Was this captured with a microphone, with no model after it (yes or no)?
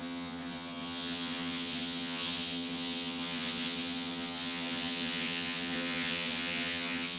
no